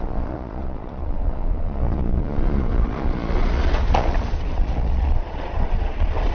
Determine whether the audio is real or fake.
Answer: fake